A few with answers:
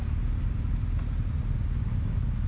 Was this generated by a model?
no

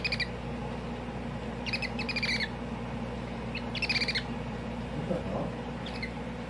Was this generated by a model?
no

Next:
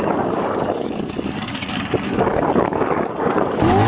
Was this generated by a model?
yes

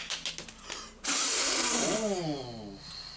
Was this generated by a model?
no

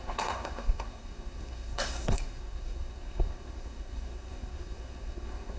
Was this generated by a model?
yes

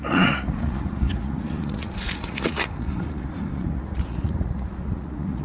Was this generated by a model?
yes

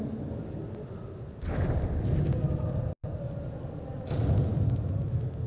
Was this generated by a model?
no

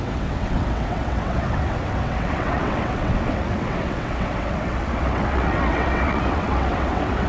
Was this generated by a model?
yes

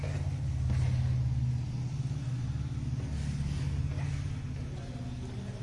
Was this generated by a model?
no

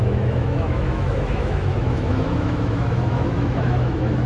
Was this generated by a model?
yes